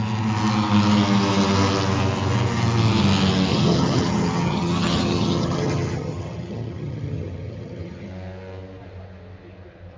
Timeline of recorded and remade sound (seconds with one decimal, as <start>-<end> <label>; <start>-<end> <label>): 0.0-3.5 recorded; 3.5-8.1 remade; 8.1-10.0 recorded